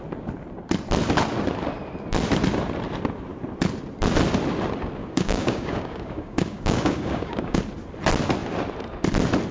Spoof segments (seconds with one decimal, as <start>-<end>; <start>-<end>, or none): 5.0-7.6